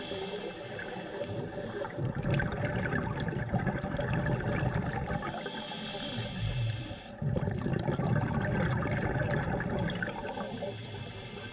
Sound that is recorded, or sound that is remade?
recorded